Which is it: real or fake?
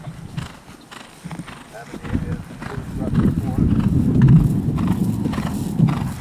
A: real